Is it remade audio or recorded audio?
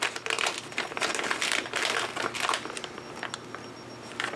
recorded